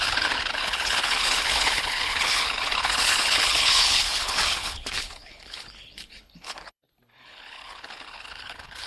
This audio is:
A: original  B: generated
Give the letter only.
B